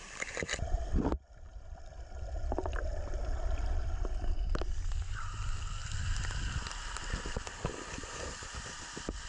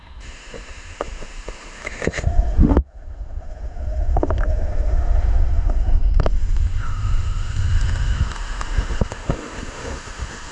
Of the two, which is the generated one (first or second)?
second